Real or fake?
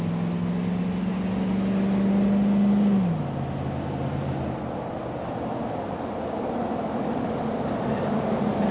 real